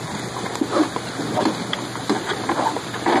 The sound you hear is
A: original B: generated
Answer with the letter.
A